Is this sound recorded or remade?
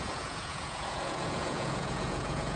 remade